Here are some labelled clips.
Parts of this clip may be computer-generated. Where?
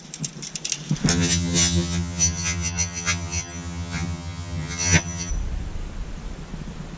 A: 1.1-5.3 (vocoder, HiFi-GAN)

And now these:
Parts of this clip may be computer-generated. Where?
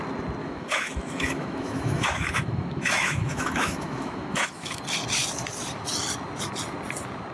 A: 0.4-4.8 (autoencoder, DAC-VAE)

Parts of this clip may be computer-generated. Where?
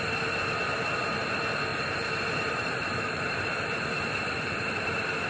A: 1.7-5.3 (vocoder, BigVGAN v2)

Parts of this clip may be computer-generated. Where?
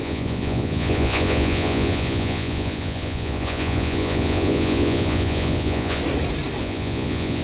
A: 0.0-6.0 (vocoder, Vocos); 6.6-7.4